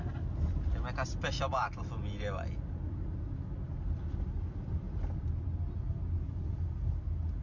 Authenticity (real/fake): real